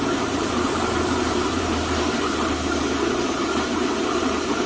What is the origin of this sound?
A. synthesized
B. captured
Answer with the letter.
A